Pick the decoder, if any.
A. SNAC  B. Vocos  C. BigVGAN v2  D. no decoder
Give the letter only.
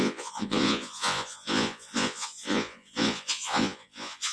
B